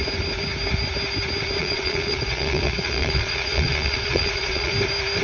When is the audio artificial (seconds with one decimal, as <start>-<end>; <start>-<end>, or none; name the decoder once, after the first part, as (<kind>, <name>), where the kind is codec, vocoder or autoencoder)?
1.6-4.7 (vocoder, Vocos)

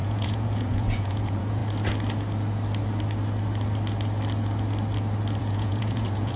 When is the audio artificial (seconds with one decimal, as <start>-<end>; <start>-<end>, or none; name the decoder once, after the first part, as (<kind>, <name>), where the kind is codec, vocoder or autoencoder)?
0.0-1.6 (vocoder, Vocos); 5.4-6.4